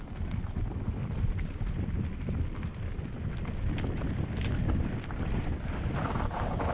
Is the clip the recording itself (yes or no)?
yes